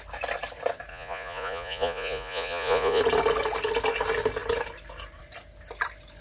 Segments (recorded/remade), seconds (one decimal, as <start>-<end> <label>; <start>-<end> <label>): 0.0-0.9 recorded; 0.9-3.0 remade; 3.0-6.2 recorded